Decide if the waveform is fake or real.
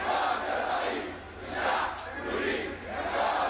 real